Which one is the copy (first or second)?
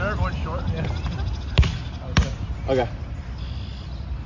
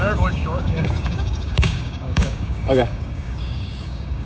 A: second